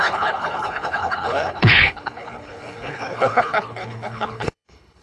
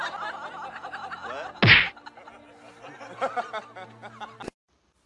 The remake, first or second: first